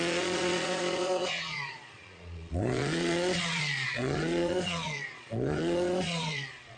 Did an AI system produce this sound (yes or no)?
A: yes